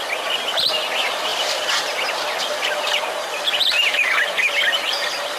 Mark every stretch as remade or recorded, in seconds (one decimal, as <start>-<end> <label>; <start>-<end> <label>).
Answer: 0.0-5.4 recorded